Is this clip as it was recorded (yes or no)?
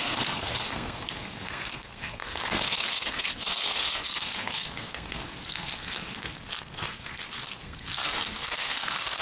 no